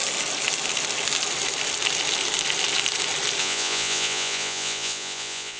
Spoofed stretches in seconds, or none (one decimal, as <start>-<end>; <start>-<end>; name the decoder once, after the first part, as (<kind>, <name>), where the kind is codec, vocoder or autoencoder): 3.4-5.6 (vocoder, Vocos)